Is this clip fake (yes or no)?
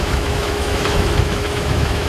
yes